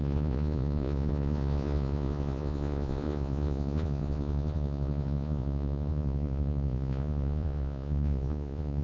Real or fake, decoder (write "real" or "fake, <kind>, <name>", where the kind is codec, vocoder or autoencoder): fake, vocoder, Vocos